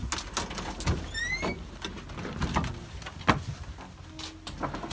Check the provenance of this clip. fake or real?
real